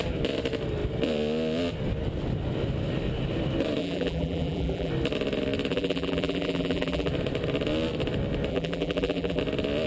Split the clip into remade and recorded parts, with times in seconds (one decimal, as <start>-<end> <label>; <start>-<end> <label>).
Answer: 0.0-3.8 recorded; 3.8-4.9 remade; 4.9-5.7 recorded; 5.7-7.1 remade; 7.1-8.5 recorded; 8.5-9.4 remade; 9.4-9.9 recorded